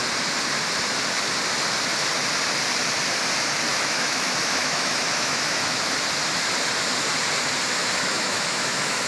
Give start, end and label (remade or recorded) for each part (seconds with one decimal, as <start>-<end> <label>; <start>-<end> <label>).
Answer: 0.0-3.7 recorded; 3.7-5.9 remade; 5.9-7.8 recorded; 7.8-9.1 remade